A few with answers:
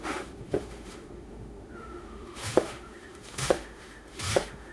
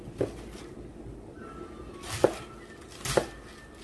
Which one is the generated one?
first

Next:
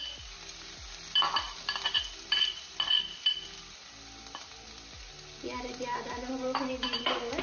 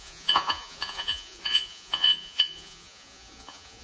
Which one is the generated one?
second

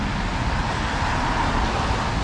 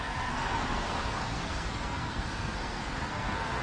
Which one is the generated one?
second